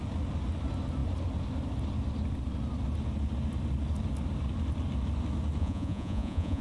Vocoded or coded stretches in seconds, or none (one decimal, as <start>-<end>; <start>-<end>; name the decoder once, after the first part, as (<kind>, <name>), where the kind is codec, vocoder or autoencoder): 5.6-6.6 (vocoder, Vocos)

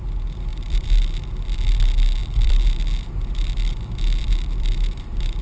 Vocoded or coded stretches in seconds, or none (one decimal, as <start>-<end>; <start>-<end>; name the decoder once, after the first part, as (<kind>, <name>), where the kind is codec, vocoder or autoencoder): 0.5-1.2 (vocoder, BigVGAN v2); 2.2-5.4

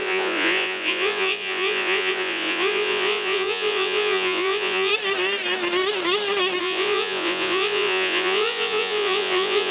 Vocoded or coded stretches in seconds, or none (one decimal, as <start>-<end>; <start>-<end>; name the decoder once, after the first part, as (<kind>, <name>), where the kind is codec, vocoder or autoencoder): 0.0-4.9 (vocoder, Vocos); 6.6-9.7